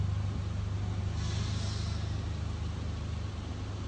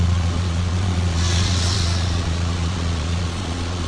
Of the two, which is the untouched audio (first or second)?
first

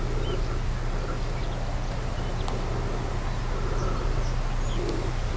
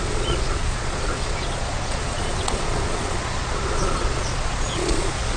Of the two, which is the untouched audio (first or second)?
first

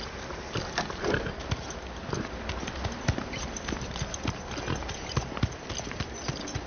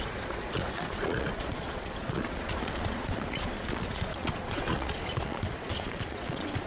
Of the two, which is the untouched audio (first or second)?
first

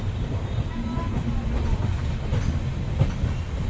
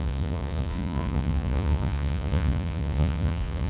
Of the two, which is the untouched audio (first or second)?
first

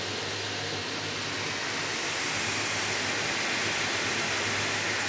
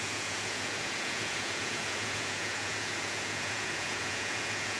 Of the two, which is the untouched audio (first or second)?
first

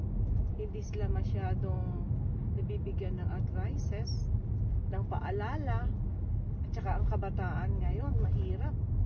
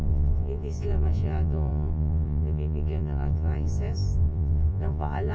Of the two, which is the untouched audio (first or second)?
first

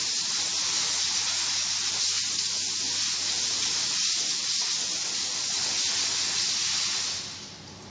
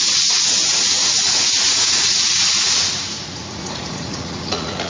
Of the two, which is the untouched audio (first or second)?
first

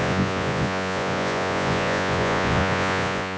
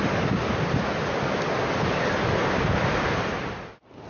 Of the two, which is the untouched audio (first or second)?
second